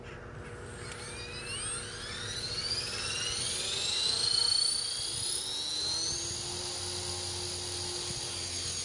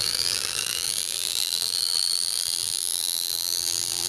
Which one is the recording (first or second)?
first